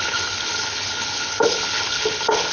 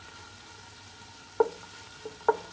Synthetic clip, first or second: first